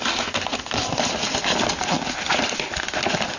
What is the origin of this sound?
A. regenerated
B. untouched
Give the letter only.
B